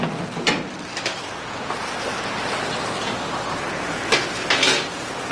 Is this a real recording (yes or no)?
yes